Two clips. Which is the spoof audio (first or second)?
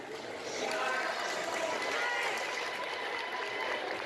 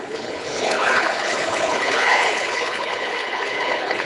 second